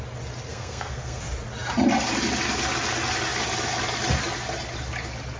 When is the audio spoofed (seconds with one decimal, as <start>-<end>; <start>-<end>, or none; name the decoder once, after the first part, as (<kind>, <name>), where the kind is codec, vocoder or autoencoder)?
0.5-1.2 (codec, SNAC)